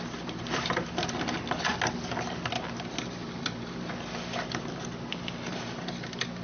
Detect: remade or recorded recorded